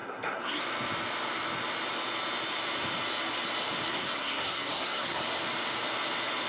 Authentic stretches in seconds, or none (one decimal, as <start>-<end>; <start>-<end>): 0.6-3.9; 5.2-6.5